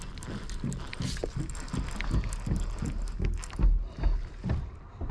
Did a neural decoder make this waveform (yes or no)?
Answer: no